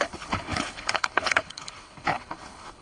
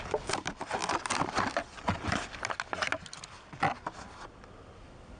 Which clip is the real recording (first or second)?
second